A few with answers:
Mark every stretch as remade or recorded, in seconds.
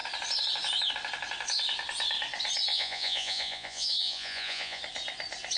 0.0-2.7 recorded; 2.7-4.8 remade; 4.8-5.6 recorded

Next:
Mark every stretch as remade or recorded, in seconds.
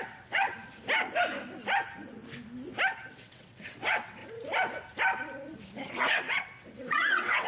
0.0-0.5 remade; 0.5-3.1 recorded; 3.1-4.2 remade; 4.2-6.0 recorded; 6.0-7.5 remade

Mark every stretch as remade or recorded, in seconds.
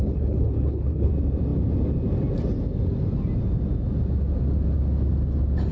0.0-1.1 remade; 1.1-5.7 recorded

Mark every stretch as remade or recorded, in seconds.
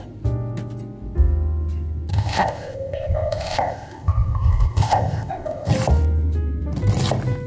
0.0-2.1 recorded; 2.1-5.7 remade; 5.7-7.5 recorded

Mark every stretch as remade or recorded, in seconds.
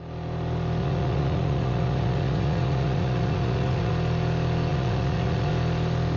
0.0-0.8 recorded; 0.8-3.9 remade; 3.9-4.7 recorded; 4.7-5.5 remade; 5.5-6.2 recorded